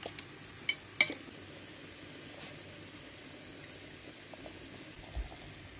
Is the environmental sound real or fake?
real